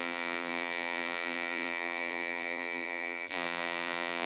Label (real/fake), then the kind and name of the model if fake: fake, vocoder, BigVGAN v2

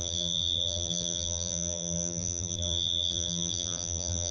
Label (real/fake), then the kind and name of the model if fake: fake, vocoder, BigVGAN v2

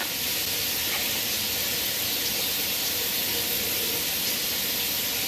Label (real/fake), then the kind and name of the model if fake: real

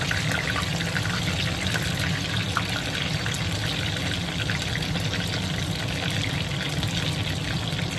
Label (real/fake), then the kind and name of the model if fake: real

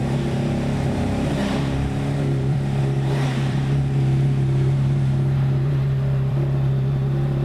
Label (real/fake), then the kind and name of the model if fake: fake, vocoder, BigVGAN v2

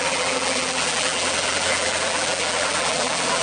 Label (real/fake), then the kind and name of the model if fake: fake, vocoder, BigVGAN v2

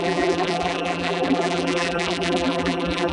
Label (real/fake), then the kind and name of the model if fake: fake, vocoder, BigVGAN v2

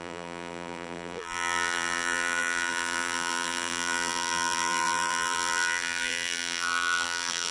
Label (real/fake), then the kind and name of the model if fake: fake, vocoder, BigVGAN v2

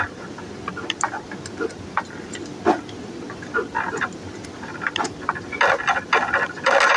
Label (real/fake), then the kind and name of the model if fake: real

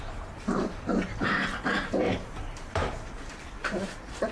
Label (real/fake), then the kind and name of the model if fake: fake, vocoder, BigVGAN v2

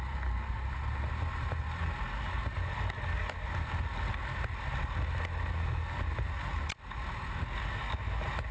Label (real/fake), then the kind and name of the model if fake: real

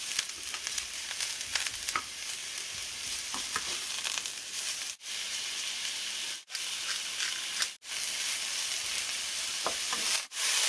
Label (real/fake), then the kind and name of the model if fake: fake, vocoder, BigVGAN v2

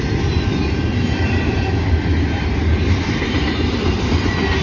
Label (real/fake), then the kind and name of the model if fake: real